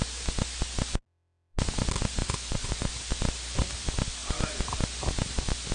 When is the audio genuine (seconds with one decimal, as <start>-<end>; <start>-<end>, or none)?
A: 0.0-2.2; 2.9-5.7